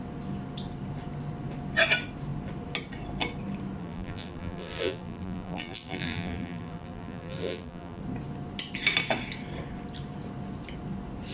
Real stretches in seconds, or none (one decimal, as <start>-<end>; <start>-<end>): 0.0-3.8; 8.0-11.3